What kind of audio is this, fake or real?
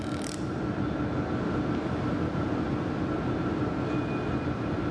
real